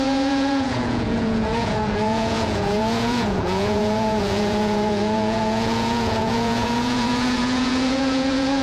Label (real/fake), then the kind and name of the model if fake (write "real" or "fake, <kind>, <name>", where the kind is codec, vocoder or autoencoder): fake, vocoder, Vocos